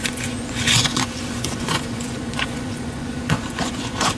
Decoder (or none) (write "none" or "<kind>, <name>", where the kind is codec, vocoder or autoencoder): vocoder, Vocos